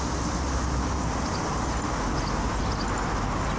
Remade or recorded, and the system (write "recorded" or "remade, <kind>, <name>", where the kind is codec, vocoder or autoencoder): recorded